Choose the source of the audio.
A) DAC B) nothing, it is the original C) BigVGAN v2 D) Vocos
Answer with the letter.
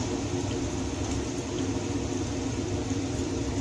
B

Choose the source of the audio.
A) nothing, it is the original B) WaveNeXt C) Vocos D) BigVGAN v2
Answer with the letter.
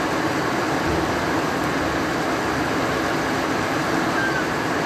A